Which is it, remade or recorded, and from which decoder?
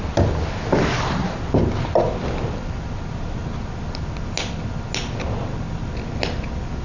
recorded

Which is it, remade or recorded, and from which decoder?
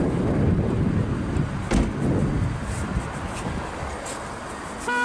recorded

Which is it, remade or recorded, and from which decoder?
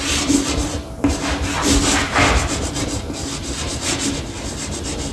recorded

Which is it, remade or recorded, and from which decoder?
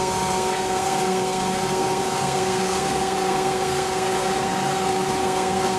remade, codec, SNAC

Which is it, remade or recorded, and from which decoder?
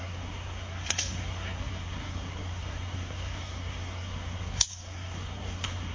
remade, codec, SNAC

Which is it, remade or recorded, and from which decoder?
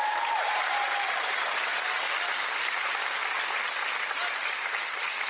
recorded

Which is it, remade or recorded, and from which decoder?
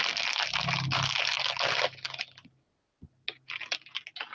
recorded